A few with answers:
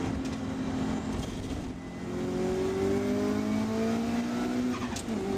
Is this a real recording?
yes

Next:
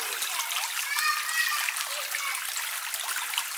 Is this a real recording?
yes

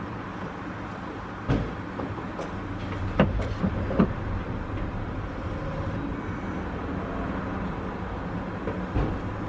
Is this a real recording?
yes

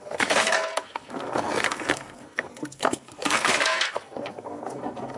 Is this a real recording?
no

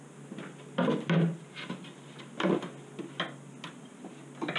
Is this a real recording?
yes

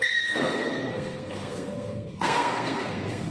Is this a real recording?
no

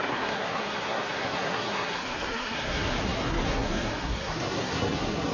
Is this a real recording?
no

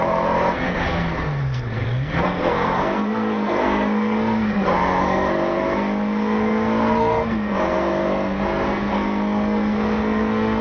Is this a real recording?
no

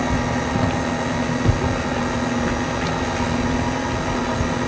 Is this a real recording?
yes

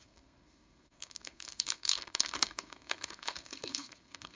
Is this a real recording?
no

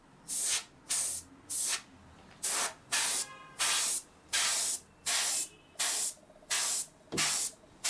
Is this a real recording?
yes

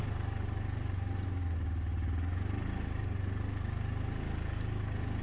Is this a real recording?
yes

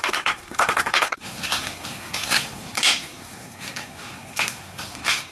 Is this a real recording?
no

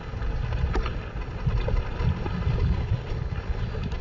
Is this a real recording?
yes